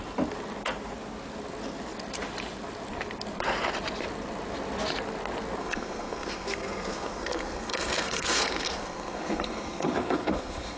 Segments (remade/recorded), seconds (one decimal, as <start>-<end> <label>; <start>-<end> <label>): 0.0-5.6 recorded; 5.6-10.8 remade